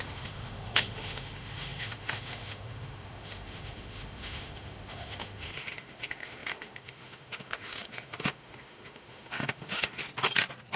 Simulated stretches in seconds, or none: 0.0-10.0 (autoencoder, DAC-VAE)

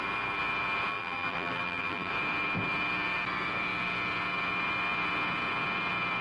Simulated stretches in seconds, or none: 0.9-2.1 (vocoder, BigVGAN v2)